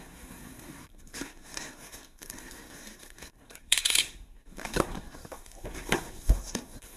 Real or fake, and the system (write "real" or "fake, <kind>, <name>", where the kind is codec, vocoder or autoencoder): fake, codec, SNAC